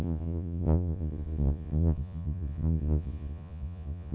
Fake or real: fake